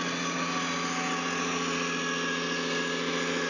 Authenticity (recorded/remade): recorded